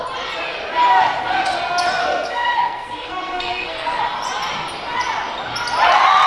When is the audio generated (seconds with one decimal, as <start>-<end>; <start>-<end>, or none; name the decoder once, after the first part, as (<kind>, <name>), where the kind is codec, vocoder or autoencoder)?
2.0-4.0 (codec, SNAC)